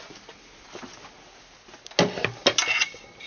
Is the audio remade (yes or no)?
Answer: no